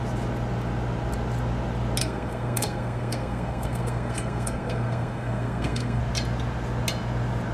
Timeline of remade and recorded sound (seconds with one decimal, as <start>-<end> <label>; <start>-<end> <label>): 0.0-2.0 recorded; 2.0-6.0 remade; 6.0-7.5 recorded

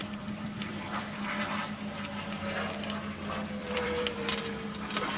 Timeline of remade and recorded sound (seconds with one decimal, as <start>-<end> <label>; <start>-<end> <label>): 0.0-1.0 remade; 1.0-3.6 recorded; 3.6-4.4 remade; 4.4-5.2 recorded

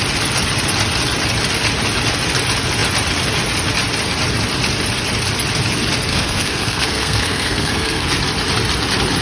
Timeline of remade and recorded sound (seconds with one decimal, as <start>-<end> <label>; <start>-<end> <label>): 0.0-6.1 recorded; 6.1-8.2 remade; 8.2-9.2 recorded

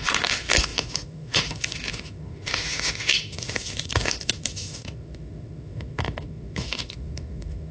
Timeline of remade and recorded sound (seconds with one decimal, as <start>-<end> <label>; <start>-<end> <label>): 0.0-7.7 remade

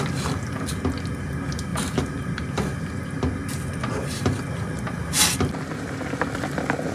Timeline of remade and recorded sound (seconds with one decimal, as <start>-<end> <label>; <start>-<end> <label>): 0.0-1.7 recorded; 1.7-2.3 remade; 2.3-3.8 recorded; 3.8-4.8 remade; 4.8-6.9 recorded